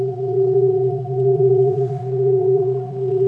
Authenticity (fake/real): fake